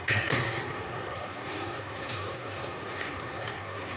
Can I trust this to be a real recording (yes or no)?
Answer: no